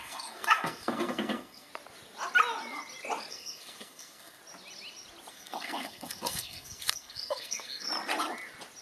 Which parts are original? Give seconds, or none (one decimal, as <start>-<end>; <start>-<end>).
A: 1.7-3.3; 4.4-5.3; 7.9-8.8